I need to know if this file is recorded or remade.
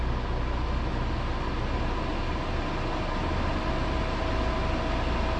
recorded